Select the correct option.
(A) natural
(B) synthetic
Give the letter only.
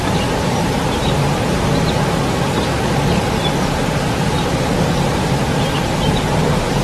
B